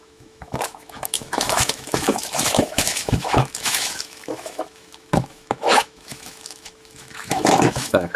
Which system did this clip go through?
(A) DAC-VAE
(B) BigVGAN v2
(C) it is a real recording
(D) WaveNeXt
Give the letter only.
A